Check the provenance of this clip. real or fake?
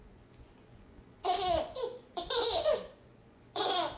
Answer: fake